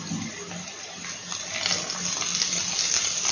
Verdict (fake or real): real